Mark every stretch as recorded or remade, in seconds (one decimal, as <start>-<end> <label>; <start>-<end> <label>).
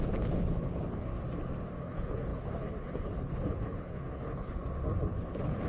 0.0-1.1 remade; 1.1-1.8 recorded; 1.8-4.6 remade; 4.6-5.1 recorded; 5.1-5.7 remade